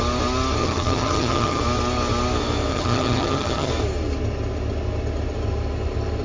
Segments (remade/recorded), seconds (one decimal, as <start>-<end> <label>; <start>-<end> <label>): 0.0-0.6 recorded; 0.6-1.6 remade; 1.6-2.7 recorded; 2.7-3.7 remade; 3.7-6.2 recorded